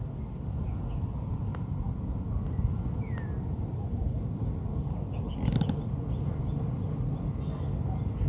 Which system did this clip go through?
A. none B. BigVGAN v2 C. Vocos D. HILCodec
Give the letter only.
A